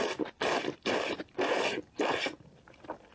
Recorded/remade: remade